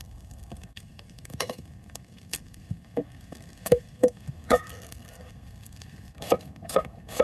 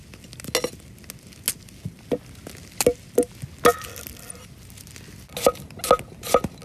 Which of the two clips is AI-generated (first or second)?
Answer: first